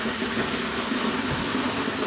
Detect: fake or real real